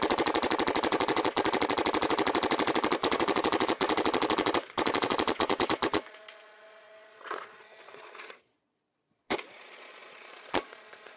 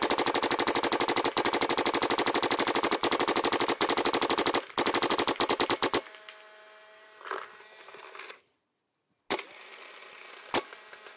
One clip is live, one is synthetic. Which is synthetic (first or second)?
first